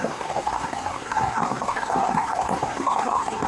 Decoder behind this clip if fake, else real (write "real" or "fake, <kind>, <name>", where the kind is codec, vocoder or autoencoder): fake, codec, SNAC